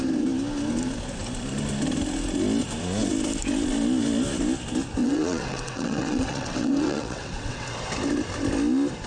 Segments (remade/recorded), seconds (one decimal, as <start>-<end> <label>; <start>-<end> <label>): 0.0-5.0 recorded; 5.0-7.7 remade; 7.7-9.1 recorded